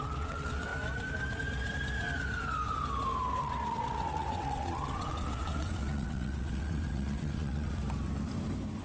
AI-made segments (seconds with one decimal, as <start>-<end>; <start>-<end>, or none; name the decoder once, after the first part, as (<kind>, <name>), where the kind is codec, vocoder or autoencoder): 0.0-0.7 (vocoder, WaveNeXt); 3.4-7.8